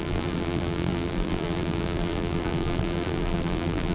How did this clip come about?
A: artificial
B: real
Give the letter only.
A